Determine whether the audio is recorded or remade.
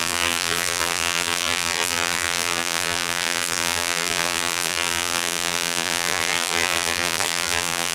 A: remade